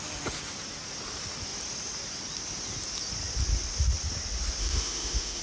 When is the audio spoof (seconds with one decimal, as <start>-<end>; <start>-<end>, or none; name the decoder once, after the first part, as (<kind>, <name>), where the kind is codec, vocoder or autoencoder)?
4.6-5.4 (autoencoder, DAC-VAE)